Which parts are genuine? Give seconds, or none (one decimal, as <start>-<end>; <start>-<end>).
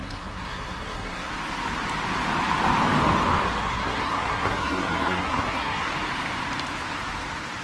1.3-3.6; 5.9-7.6